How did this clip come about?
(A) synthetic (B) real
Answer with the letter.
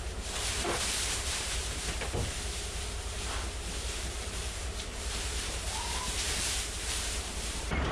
A